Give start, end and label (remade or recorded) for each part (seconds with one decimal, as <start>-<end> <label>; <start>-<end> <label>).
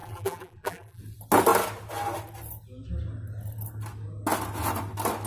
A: 0.0-1.0 remade; 1.0-5.3 recorded